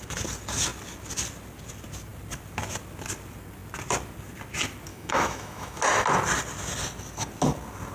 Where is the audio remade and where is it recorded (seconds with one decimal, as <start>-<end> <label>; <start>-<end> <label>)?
0.0-4.9 recorded; 4.9-5.8 remade; 5.8-7.9 recorded